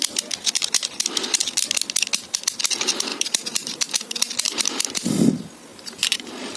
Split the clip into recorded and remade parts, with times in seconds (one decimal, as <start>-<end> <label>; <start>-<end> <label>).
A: 0.0-3.1 recorded; 3.1-4.3 remade; 4.3-5.7 recorded; 5.7-6.6 remade